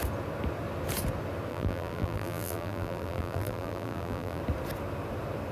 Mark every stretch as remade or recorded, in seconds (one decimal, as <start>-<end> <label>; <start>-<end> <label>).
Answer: 0.0-1.5 recorded; 1.5-4.4 remade; 4.4-5.5 recorded